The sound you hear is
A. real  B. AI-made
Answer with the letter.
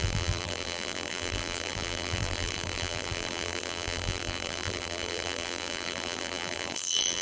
B